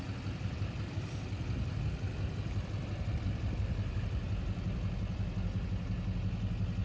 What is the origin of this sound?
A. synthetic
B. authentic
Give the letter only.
B